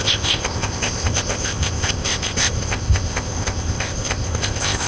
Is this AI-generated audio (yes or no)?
yes